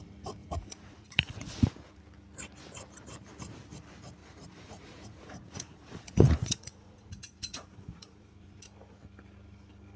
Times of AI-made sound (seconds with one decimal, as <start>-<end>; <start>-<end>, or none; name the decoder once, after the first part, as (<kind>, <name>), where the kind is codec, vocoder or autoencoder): 0.4-2.0 (vocoder, Vocos); 4.2-8.6